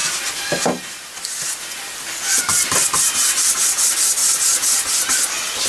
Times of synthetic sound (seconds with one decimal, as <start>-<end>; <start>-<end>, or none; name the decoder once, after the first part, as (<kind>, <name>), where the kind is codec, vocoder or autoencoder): none